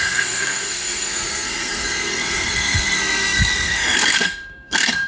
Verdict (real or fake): fake